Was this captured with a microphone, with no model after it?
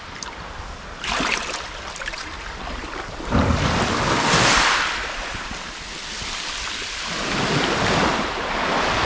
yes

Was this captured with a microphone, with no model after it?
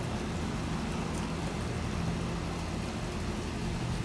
yes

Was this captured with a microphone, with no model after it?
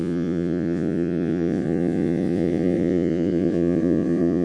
no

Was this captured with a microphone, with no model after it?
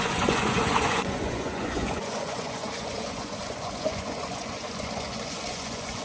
no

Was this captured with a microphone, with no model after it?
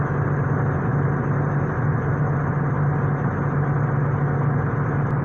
yes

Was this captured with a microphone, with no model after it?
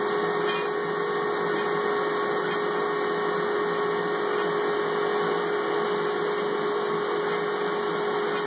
yes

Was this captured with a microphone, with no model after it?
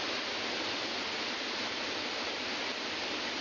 yes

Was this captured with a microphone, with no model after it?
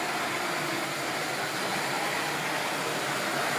yes